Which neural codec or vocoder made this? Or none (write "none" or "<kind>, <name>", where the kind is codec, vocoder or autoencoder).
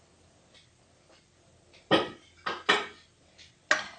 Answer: none